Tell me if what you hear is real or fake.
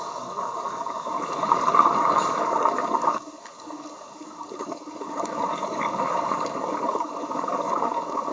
fake